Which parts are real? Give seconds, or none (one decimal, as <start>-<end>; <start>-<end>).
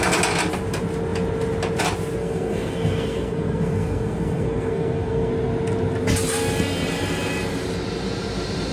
0.0-2.2; 5.3-8.7